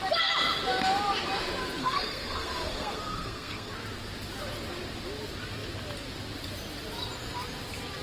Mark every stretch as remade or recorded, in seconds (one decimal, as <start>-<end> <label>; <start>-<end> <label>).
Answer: 0.0-1.8 recorded; 1.8-3.7 remade; 3.7-8.0 recorded